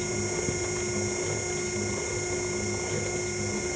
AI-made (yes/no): no